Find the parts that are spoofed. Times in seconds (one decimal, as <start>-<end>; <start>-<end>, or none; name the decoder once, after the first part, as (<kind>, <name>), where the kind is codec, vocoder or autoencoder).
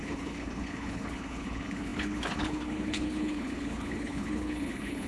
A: 0.0-5.1 (codec, HILCodec)